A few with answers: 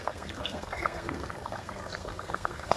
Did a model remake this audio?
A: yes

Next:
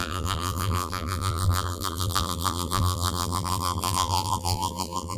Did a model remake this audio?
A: yes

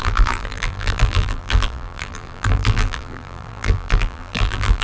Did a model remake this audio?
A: yes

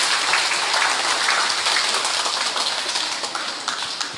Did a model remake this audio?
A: no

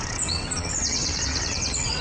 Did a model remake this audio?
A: yes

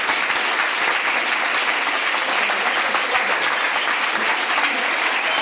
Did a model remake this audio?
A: no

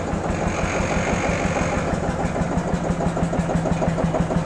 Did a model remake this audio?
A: no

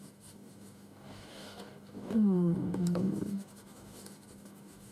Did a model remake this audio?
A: yes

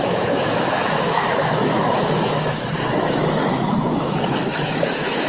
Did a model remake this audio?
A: yes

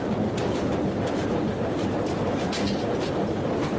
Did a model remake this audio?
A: yes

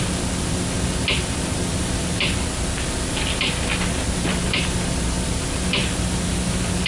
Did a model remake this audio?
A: no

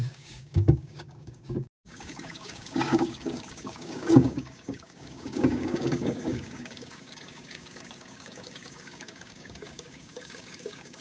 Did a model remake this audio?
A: yes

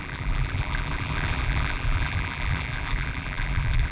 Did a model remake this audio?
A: yes